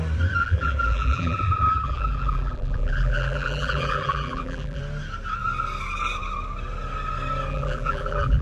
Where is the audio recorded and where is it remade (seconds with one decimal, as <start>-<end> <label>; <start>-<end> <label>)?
0.0-0.4 recorded; 0.4-4.8 remade; 4.8-7.5 recorded; 7.5-8.4 remade